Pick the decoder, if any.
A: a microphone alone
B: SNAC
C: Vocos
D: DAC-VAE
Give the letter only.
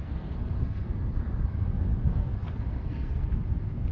B